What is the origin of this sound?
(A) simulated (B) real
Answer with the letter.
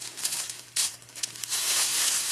A